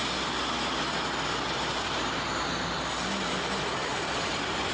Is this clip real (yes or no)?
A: yes